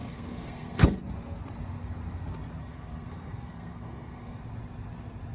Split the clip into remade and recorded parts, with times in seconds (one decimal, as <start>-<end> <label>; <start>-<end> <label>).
0.0-1.0 remade; 1.0-2.6 recorded; 2.6-4.4 remade; 4.4-5.3 recorded